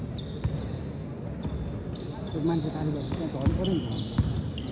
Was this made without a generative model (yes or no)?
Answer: yes